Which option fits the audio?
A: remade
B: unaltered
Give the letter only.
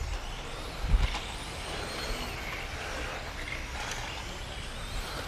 B